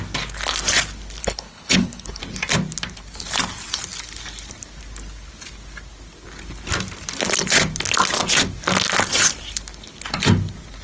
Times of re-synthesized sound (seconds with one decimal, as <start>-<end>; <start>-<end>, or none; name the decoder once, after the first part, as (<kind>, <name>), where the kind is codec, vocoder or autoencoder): 1.2-2.2 (codec, HILCodec)